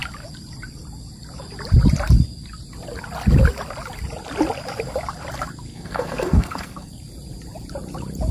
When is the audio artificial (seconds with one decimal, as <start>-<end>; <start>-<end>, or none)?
5.7-6.9